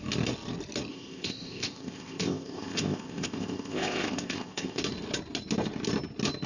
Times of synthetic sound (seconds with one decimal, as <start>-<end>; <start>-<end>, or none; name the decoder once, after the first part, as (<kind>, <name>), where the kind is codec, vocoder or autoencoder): 0.9-4.8 (codec, ZipCodec)